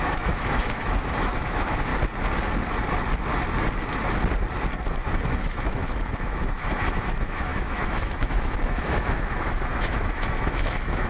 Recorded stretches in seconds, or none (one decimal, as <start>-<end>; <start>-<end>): 1.9-4.9